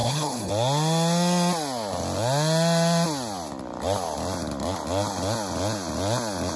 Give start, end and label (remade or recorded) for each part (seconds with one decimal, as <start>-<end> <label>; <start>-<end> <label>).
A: 0.0-0.5 remade; 0.5-6.6 recorded